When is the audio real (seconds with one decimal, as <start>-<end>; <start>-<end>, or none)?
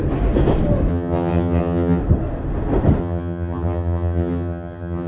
0.0-0.9; 2.0-3.0